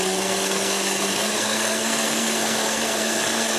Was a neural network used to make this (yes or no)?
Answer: yes